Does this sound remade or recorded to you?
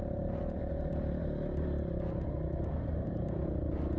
recorded